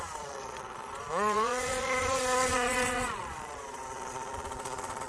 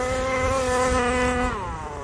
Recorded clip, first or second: second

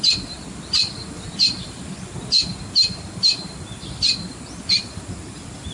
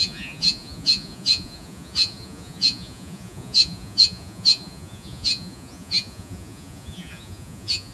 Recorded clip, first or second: first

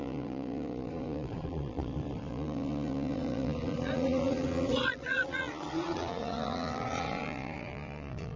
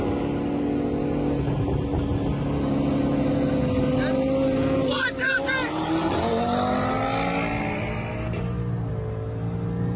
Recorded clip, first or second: second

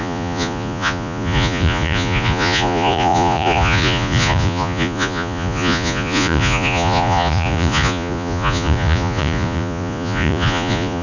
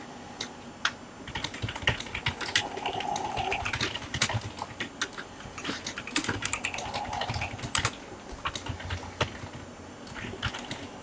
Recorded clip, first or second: second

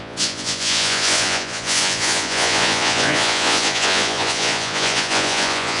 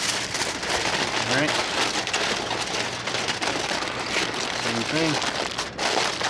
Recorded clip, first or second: second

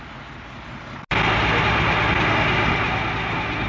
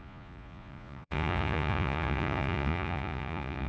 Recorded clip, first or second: first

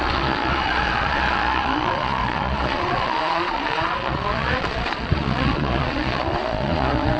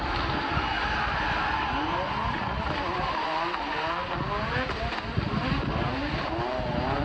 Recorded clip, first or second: second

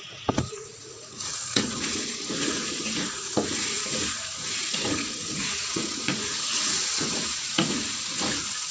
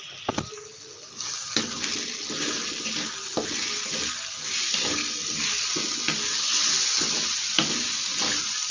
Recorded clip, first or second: second